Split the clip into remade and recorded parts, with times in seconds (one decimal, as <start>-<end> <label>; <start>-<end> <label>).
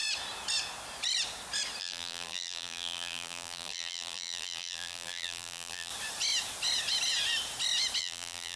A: 0.0-1.8 recorded; 1.8-5.9 remade; 5.9-8.0 recorded; 8.0-8.6 remade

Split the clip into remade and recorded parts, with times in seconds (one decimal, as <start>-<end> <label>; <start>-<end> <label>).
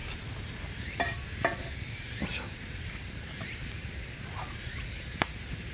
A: 0.0-0.8 recorded; 0.8-5.7 remade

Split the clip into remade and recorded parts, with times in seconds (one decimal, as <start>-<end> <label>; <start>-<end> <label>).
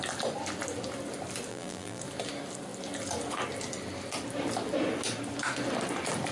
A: 0.0-1.5 recorded; 1.5-2.0 remade; 2.0-6.3 recorded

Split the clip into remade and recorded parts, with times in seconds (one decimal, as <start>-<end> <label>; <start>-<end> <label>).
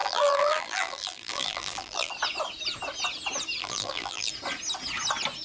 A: 0.0-2.1 remade; 2.1-3.6 recorded; 3.6-4.3 remade; 4.3-5.4 recorded